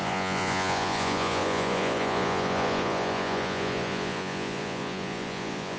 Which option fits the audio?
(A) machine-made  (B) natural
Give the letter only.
A